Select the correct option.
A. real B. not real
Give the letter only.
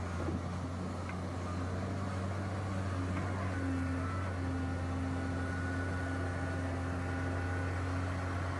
A